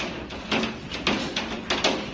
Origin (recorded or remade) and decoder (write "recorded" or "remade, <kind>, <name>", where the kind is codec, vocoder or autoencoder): recorded